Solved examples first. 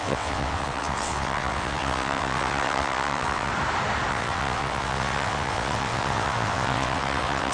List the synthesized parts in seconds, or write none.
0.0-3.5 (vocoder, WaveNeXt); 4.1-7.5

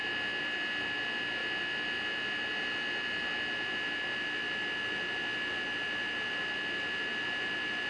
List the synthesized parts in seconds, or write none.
none

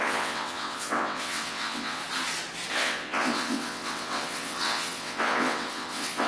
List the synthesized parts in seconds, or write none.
0.0-2.0 (vocoder, WaveNeXt); 2.7-6.3